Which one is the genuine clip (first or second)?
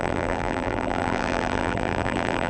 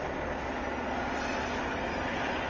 second